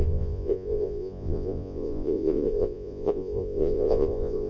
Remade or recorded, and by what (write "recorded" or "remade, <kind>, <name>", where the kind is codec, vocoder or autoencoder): remade, vocoder, Vocos